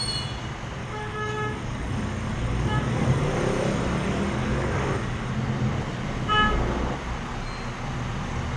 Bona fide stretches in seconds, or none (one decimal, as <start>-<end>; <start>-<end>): 0.0-0.8; 5.3-8.6

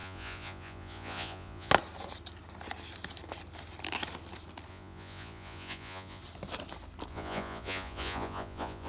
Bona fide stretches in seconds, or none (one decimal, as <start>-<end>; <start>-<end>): 1.7-4.7; 6.2-7.1